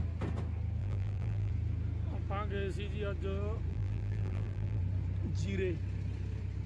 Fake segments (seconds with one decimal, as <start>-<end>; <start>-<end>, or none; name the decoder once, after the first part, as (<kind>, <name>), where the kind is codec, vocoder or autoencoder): 0.8-1.5 (vocoder, BigVGAN v2); 3.7-4.8